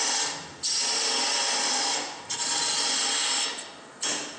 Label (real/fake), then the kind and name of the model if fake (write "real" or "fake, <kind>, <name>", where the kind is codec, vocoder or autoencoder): real